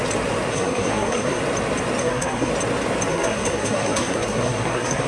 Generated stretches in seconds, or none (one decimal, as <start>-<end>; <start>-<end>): 0.5-1.4; 2.0-2.5; 3.1-5.1